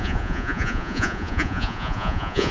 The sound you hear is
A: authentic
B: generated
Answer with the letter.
B